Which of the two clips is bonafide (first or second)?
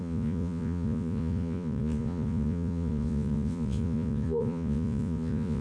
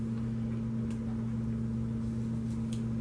second